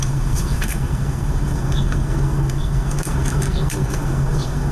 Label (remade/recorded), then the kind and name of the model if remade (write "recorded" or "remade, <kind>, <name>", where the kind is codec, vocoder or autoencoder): remade, codec, SNAC